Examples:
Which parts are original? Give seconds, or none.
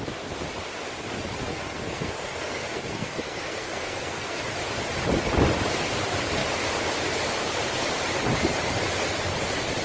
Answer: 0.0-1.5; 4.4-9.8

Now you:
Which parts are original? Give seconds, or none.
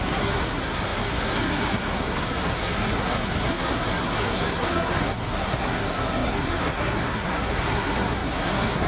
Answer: none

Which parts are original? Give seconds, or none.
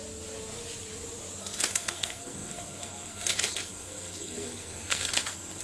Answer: 0.0-1.4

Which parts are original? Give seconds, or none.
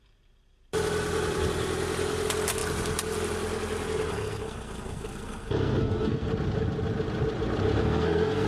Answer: 0.0-4.1; 6.3-7.8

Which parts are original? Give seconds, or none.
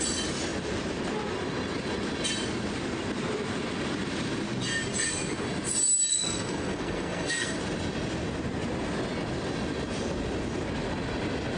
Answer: 0.0-6.1; 7.6-11.6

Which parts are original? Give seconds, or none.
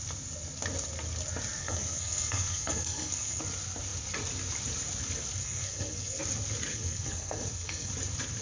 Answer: 0.0-1.6; 3.4-5.4; 6.2-6.7; 7.9-8.4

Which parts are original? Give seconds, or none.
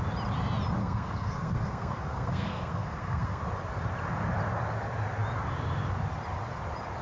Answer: 0.0-0.8; 3.4-7.0